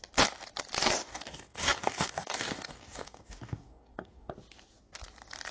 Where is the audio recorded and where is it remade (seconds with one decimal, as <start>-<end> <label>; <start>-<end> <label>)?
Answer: 0.0-1.0 recorded; 1.0-4.3 remade; 4.3-5.5 recorded